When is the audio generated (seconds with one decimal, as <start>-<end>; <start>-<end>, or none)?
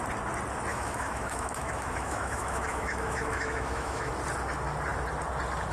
0.7-4.1